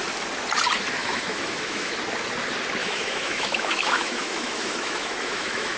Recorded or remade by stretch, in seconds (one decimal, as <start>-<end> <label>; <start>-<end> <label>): 0.0-1.0 recorded; 1.0-1.9 remade; 1.9-2.8 recorded; 2.8-5.8 remade

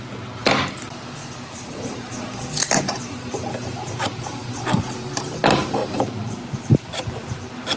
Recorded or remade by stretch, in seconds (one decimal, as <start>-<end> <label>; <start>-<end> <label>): 0.0-1.2 recorded; 1.2-4.8 remade; 4.8-5.8 recorded; 5.8-6.9 remade; 6.9-7.8 recorded

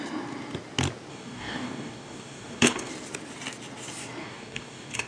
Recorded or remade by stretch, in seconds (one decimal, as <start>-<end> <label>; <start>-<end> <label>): 0.0-1.1 recorded; 1.1-2.9 remade; 2.9-4.2 recorded; 4.2-5.1 remade

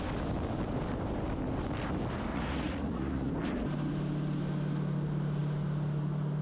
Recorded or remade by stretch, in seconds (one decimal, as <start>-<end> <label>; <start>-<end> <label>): 0.0-2.3 recorded; 2.3-3.3 remade; 3.3-6.4 recorded

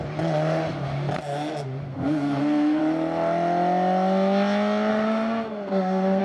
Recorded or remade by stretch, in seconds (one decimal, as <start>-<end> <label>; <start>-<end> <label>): 0.0-1.9 recorded; 1.9-2.8 remade; 2.8-4.9 recorded; 4.9-6.2 remade

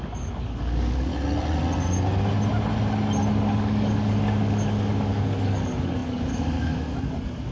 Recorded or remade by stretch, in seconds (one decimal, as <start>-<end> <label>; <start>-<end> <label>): 0.0-1.1 remade; 1.1-3.3 recorded; 3.3-7.5 remade

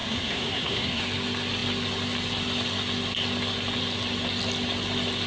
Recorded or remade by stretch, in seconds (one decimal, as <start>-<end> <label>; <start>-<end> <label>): 0.0-1.0 remade; 1.0-5.3 recorded

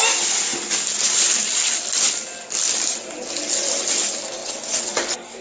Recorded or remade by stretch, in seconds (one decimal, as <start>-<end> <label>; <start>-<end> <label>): 0.0-4.4 recorded; 4.4-4.9 remade; 4.9-5.4 recorded